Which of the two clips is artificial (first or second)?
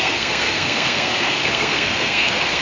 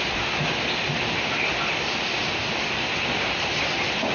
first